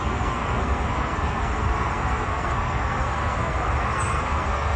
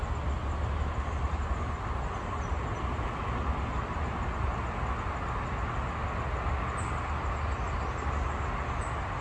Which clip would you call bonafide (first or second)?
second